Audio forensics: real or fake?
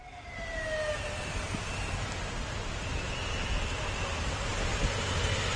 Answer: real